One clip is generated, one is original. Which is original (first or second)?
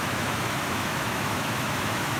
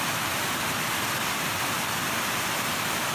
second